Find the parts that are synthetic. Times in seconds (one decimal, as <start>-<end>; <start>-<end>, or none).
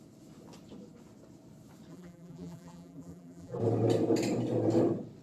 1.9-3.6